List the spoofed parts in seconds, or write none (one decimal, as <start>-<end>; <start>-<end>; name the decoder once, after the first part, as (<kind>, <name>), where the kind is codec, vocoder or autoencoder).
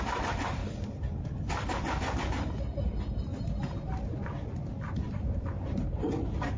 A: 0.0-0.6 (vocoder, BigVGAN v2); 2.3-3.3; 5.1-6.6